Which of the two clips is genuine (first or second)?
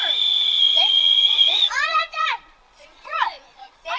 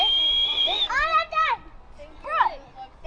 second